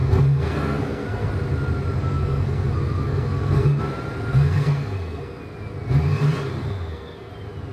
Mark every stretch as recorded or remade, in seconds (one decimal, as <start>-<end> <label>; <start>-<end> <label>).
0.0-1.3 remade; 1.3-2.0 recorded; 2.0-3.8 remade; 3.8-4.3 recorded; 4.3-5.4 remade; 5.4-6.6 recorded; 6.6-7.3 remade; 7.3-7.7 recorded